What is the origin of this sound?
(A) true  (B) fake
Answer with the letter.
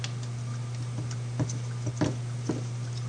A